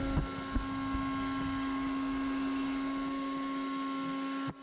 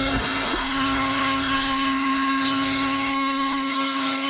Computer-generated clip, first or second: second